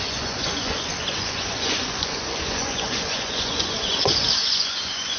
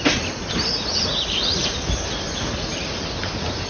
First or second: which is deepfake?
first